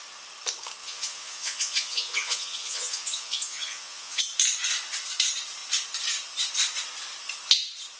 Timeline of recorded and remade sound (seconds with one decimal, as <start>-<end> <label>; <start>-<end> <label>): 0.0-0.8 recorded; 0.8-4.2 remade; 4.2-8.0 recorded